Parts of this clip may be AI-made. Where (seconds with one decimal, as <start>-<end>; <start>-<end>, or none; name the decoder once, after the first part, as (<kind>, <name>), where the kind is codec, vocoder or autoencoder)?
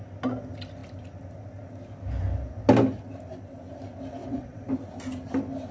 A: 4.2-4.7 (vocoder, WaveNeXt)